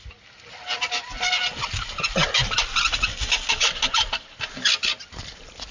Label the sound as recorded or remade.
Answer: recorded